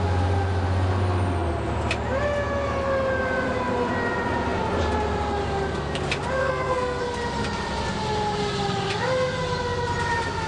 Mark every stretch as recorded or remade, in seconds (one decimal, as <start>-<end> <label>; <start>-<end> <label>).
0.0-6.4 recorded; 6.4-7.0 remade; 7.0-10.5 recorded